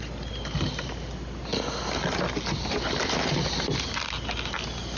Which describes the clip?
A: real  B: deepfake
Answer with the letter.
A